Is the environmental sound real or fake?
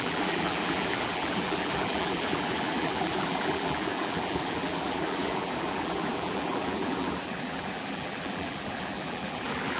fake